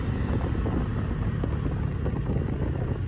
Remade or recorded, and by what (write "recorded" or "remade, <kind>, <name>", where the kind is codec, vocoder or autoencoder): recorded